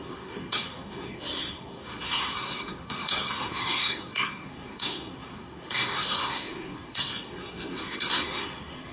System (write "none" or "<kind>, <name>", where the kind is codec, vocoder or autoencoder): codec, SNAC